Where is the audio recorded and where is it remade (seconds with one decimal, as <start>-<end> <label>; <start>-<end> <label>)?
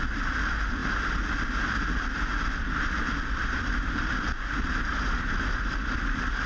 0.0-0.8 remade; 0.8-3.3 recorded; 3.3-6.5 remade